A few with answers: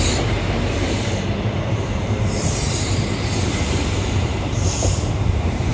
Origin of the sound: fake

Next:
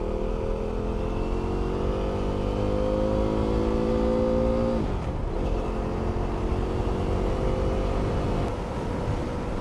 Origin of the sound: real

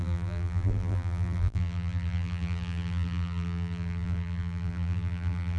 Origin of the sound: fake